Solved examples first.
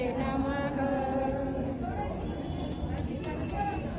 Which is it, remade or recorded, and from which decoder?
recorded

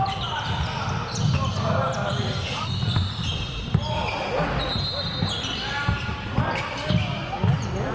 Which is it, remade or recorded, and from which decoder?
recorded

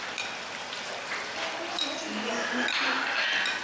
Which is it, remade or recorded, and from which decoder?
recorded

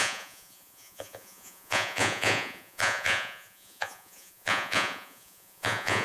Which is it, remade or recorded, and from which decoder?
remade, vocoder, Vocos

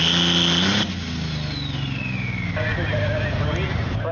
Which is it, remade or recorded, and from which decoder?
recorded